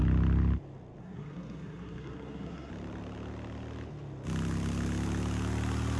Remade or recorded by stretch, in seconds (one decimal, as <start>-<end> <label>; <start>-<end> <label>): 0.0-1.0 recorded; 1.0-2.7 remade; 2.7-6.0 recorded

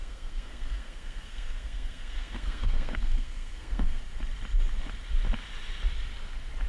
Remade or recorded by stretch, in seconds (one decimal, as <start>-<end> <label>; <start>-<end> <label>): 0.0-4.0 remade; 4.0-6.7 recorded

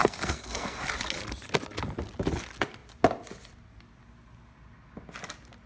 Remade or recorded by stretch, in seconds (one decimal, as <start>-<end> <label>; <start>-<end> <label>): 0.0-0.8 remade; 0.8-5.7 recorded

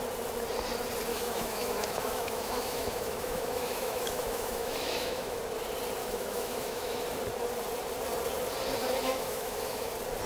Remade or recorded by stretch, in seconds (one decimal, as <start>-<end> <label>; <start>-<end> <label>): 0.0-1.1 recorded; 1.1-5.4 remade; 5.4-6.0 recorded; 6.0-7.0 remade; 7.0-9.0 recorded; 9.0-9.9 remade; 9.9-10.3 recorded

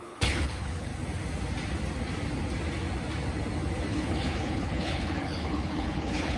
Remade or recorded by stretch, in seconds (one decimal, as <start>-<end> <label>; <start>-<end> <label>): 0.0-0.9 remade; 0.9-3.9 recorded; 3.9-6.4 remade

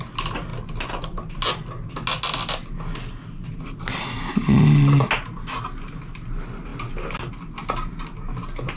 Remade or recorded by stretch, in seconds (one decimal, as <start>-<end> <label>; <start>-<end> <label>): 0.0-8.8 recorded